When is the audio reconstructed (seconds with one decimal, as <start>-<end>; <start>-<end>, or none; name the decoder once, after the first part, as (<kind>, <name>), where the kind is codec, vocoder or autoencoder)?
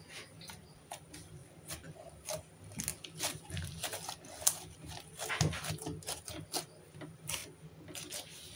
1.4-2.5 (vocoder, BigVGAN v2); 2.9-5.3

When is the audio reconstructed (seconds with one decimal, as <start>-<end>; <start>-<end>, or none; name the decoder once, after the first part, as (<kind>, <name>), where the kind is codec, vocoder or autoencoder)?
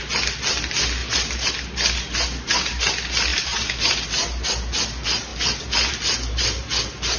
1.0-1.5 (vocoder, BigVGAN v2); 3.3-4.5; 5.3-5.9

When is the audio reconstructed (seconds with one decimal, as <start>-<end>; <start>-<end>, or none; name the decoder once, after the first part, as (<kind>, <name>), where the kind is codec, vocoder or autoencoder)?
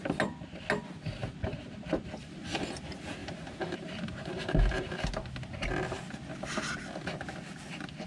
1.2-1.9 (vocoder, BigVGAN v2); 3.2-5.0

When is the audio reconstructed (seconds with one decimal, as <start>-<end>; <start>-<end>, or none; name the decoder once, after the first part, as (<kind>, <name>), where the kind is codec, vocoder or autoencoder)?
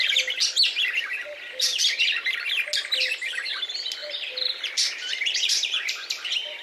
4.0-6.1 (vocoder, BigVGAN v2)